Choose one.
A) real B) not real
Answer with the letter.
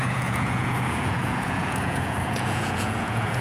B